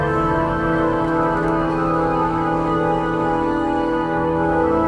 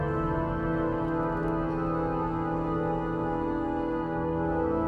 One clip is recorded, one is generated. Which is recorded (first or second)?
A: second